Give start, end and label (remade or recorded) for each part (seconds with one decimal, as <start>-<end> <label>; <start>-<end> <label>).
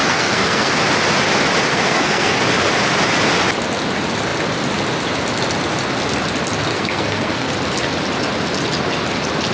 0.0-0.7 remade; 0.7-1.7 recorded; 1.7-2.4 remade; 2.4-6.7 recorded; 6.7-7.5 remade; 7.5-9.5 recorded